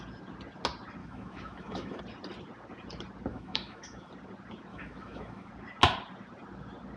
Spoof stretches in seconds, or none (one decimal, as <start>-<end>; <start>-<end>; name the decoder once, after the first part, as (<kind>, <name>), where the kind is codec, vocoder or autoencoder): 1.0-2.0 (autoencoder, DAC-VAE); 3.3-4.1; 4.7-5.5